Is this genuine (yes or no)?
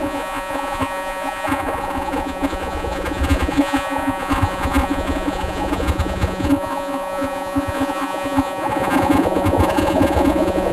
no